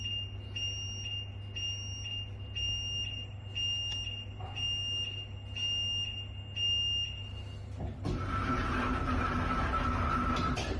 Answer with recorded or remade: recorded